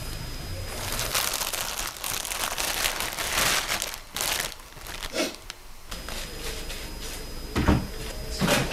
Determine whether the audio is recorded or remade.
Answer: recorded